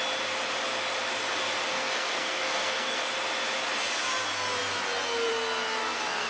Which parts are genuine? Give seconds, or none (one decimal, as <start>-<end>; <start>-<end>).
0.0-1.7; 3.1-5.8